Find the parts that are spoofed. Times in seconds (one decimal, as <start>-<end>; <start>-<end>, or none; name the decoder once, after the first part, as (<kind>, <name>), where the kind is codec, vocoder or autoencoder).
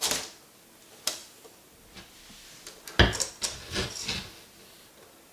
none